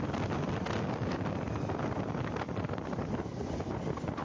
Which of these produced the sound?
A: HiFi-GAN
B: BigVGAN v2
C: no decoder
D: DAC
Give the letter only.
C